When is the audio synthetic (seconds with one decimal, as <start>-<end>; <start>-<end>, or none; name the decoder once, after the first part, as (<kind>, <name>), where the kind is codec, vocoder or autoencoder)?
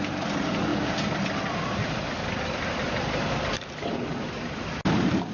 none